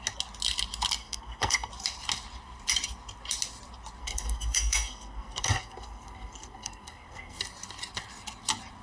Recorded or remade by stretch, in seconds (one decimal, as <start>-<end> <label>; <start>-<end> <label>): 0.0-1.0 recorded; 1.0-1.7 remade; 1.7-4.0 recorded; 4.0-7.4 remade; 7.4-8.8 recorded